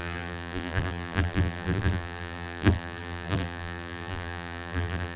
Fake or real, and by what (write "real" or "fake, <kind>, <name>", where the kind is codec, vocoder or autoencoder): fake, vocoder, BigVGAN v2